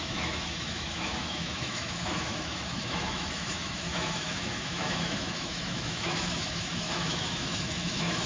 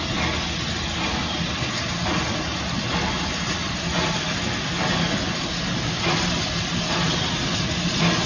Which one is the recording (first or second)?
second